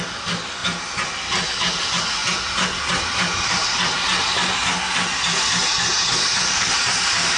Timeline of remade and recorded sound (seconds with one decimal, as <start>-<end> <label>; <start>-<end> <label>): 0.0-7.4 recorded